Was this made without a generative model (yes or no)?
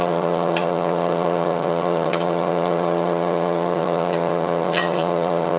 no